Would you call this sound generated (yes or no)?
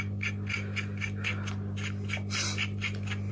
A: no